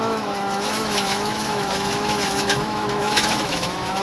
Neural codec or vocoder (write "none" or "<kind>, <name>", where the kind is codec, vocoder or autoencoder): autoencoder, DAC-VAE